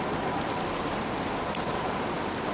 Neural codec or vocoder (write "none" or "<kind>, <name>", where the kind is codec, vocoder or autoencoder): none